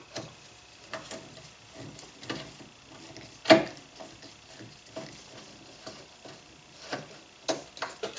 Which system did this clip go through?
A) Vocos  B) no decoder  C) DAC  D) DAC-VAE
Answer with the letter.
B